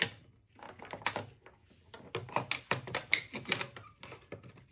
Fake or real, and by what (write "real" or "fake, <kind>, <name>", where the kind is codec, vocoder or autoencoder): real